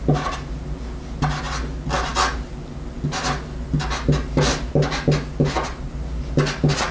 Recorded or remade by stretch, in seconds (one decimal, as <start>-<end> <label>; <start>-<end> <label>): 0.0-6.9 recorded